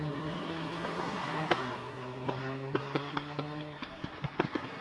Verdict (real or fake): fake